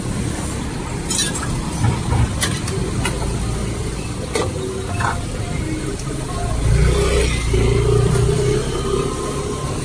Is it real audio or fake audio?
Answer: real